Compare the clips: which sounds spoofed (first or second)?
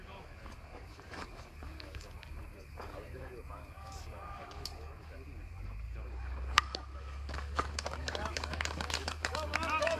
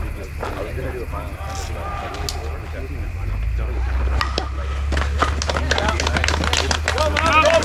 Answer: first